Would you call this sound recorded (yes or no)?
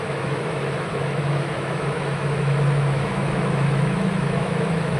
no